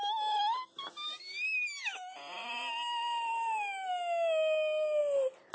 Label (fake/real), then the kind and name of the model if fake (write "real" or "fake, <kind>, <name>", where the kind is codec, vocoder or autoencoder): real